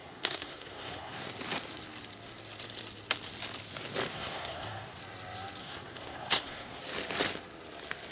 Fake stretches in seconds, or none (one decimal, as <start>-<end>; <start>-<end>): 0.0-1.3; 4.1-5.0; 5.6-6.8

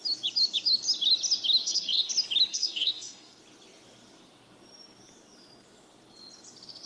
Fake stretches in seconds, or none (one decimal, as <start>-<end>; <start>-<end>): 1.6-2.1; 2.5-3.4

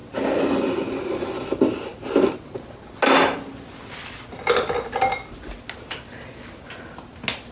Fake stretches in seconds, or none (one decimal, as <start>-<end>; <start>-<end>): none

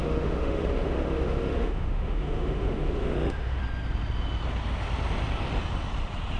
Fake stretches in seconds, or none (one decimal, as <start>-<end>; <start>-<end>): 0.0-3.6

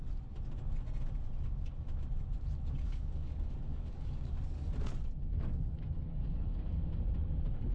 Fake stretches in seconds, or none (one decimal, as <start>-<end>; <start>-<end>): 2.8-3.3; 3.7-4.3; 6.2-6.7

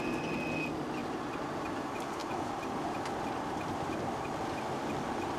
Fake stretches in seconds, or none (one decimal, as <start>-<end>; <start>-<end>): 1.0-1.7; 2.2-4.3